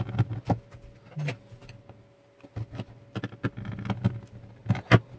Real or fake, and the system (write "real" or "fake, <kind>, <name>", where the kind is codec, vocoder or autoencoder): real